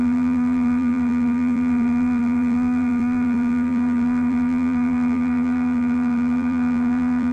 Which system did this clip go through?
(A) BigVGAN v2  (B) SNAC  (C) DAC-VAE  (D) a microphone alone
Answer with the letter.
A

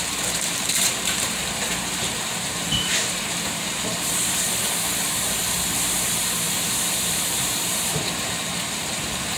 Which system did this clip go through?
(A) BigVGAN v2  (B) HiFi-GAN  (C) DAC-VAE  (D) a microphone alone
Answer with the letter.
A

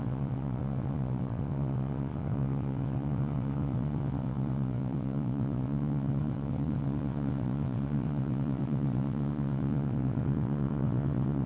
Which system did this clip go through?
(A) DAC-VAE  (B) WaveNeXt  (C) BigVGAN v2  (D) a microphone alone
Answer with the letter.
B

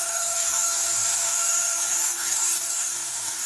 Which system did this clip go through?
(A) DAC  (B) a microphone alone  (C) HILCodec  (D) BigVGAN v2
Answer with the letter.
A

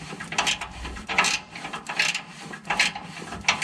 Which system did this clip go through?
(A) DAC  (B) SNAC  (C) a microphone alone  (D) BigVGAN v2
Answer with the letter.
C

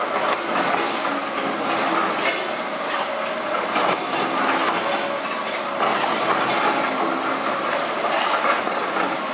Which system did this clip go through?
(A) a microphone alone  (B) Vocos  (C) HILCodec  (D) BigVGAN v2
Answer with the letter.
A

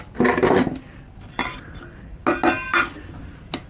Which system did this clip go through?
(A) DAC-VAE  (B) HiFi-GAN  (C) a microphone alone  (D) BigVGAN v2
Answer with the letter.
C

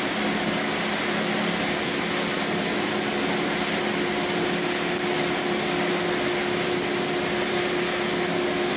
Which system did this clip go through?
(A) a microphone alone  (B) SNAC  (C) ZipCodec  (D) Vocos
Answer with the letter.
A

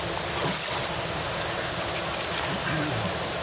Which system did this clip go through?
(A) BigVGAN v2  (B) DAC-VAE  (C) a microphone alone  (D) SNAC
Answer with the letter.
C